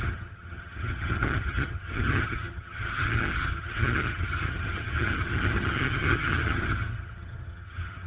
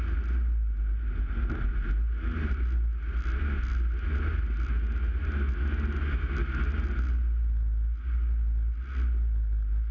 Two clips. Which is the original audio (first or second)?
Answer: second